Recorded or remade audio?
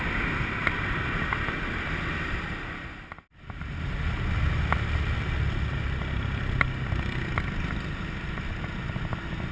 recorded